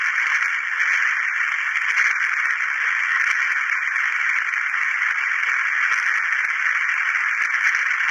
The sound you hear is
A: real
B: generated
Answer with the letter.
A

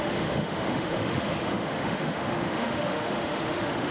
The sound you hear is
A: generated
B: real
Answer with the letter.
A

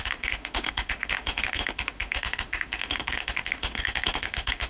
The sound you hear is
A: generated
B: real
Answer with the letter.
A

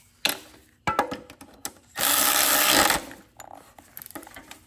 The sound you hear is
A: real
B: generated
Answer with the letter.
A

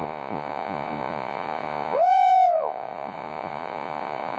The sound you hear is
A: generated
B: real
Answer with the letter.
A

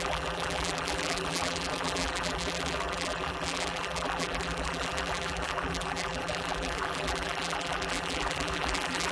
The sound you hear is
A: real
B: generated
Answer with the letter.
B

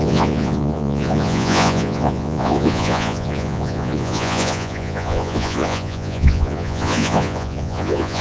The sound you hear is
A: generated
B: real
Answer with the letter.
A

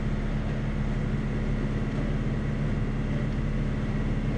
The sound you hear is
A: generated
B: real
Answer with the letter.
B